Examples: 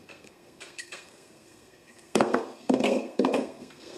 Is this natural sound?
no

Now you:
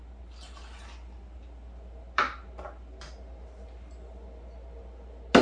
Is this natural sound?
yes